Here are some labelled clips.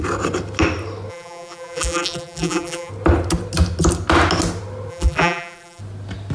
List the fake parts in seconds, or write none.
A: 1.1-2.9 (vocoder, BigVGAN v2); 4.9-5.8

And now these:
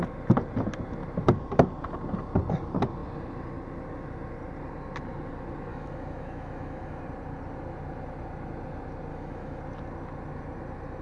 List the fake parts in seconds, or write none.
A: 5.7-7.0 (autoencoder, DAC-VAE); 9.1-9.6

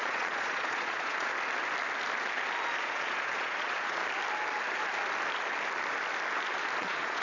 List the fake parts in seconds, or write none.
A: 0.0-1.3 (vocoder, Vocos); 2.8-4.0; 6.8-7.2

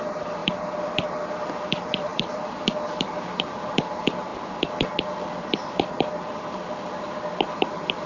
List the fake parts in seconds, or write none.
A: 0.4-1.5 (vocoder, BigVGAN v2); 2.1-3.5